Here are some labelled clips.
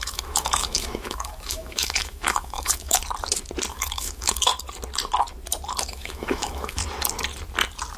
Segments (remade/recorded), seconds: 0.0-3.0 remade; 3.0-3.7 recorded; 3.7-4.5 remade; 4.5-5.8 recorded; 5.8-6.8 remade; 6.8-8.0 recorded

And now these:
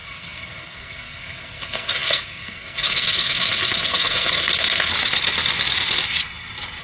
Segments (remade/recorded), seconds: 0.0-4.9 remade; 4.9-6.8 recorded

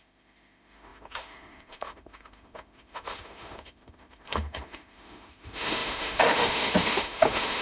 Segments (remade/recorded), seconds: 0.0-7.6 remade

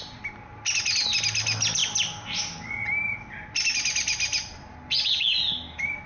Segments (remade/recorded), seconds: 0.0-6.1 recorded

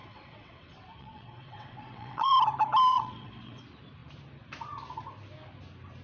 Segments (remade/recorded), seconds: 0.0-2.3 remade; 2.3-2.9 recorded; 2.9-3.6 remade; 3.6-6.0 recorded